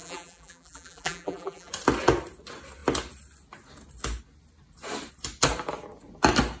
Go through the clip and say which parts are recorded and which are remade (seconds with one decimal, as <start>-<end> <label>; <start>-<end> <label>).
0.0-1.7 remade; 1.7-6.6 recorded